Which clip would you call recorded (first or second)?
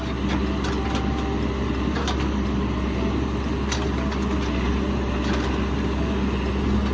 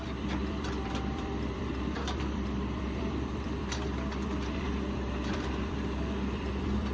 first